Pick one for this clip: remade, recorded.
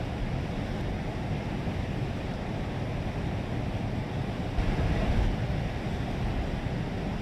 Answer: recorded